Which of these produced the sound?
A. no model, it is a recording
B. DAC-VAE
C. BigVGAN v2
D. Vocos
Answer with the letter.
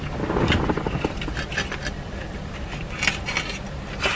A